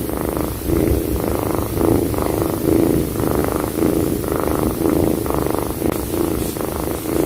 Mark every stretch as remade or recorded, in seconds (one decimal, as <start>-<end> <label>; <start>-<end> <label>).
0.0-3.4 recorded; 3.4-4.1 remade; 4.1-7.3 recorded